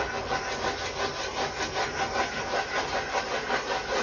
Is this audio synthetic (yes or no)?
no